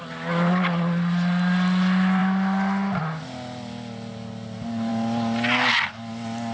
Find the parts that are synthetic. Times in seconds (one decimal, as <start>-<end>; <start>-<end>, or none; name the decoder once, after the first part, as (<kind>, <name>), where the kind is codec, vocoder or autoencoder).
none